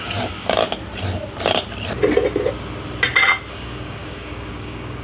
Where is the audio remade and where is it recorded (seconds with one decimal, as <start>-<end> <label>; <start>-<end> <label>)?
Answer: 0.0-0.6 remade; 0.6-3.5 recorded; 3.5-5.0 remade